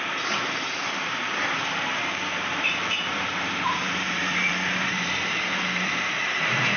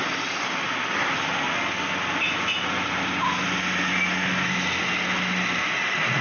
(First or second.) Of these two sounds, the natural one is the second